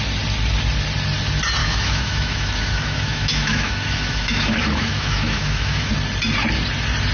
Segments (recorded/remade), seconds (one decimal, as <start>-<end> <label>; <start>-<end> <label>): 0.0-1.6 recorded; 1.6-5.9 remade; 5.9-7.1 recorded